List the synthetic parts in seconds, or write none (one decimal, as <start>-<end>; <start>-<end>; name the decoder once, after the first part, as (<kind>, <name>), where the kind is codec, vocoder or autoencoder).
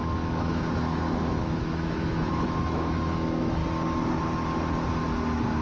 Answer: 0.0-3.6 (autoencoder, DAC-VAE)